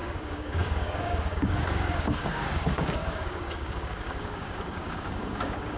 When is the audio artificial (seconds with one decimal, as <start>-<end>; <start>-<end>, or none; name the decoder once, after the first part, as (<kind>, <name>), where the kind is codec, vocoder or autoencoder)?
0.0-5.8 (codec, DAC)